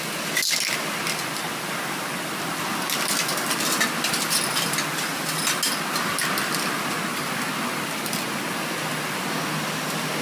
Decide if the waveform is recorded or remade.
recorded